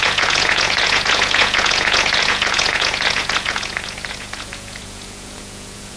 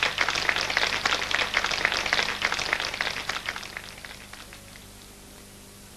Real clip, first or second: second